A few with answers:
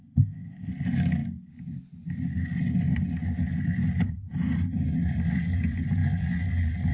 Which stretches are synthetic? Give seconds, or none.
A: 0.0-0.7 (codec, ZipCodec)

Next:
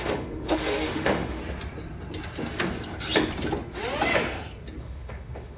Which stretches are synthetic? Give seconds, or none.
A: 0.0-1.4 (autoencoder, DAC-VAE); 4.8-5.6

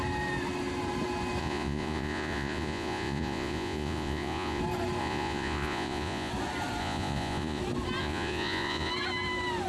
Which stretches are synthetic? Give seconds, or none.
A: 1.4-4.6 (vocoder, Vocos); 5.0-6.3; 6.8-7.6; 8.0-8.9

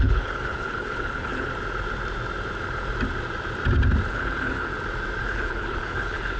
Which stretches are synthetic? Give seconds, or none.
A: 0.0-1.5 (codec, HILCodec); 4.1-4.7; 5.2-6.4

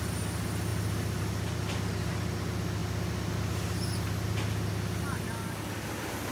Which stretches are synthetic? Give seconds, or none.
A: none